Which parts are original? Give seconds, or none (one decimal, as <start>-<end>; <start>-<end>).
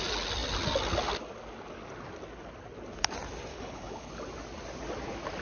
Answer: 0.0-3.5; 4.1-5.4